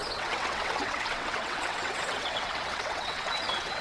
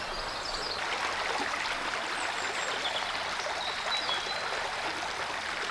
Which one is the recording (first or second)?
second